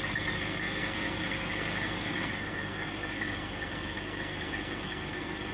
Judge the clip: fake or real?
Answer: fake